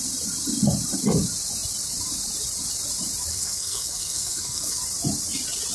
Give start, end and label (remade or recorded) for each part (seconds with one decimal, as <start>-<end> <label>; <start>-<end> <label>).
0.0-3.3 recorded; 3.3-4.8 remade; 4.8-5.7 recorded